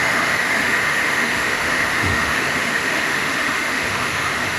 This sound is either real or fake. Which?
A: fake